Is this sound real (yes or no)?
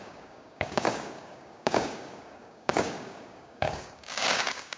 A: no